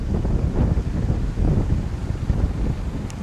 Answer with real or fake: real